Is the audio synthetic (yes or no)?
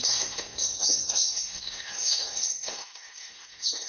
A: yes